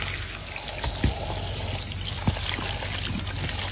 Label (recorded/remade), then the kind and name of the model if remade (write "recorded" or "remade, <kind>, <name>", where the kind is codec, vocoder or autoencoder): recorded